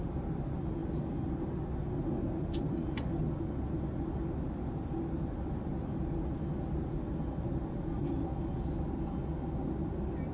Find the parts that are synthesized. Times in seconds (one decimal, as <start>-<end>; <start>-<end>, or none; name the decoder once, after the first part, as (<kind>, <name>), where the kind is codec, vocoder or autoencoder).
none